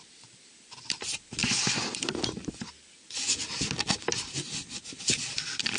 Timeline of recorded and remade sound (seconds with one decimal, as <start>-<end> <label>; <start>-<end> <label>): 0.0-5.8 recorded